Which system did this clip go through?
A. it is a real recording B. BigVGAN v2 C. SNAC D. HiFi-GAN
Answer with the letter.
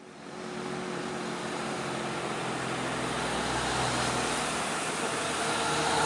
A